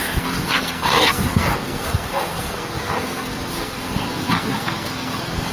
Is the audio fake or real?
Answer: fake